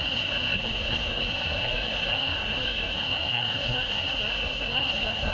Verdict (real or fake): fake